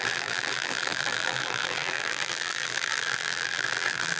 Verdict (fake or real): fake